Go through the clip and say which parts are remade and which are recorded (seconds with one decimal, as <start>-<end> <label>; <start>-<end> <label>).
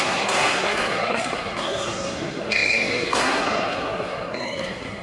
0.0-5.0 remade